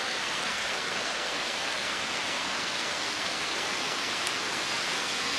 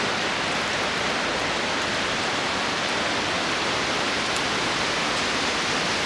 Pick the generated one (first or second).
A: first